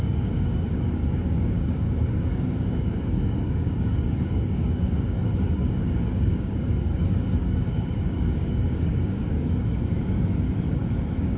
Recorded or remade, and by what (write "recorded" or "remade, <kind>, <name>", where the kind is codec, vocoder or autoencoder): remade, codec, DAC